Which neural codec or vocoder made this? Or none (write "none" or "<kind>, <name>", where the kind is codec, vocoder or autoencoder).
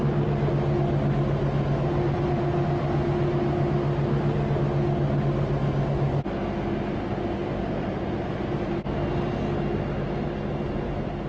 none